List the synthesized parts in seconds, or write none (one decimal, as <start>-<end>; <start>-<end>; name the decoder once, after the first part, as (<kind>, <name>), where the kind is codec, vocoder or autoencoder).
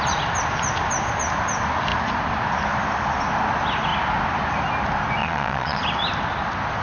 5.2-5.8 (vocoder, Vocos)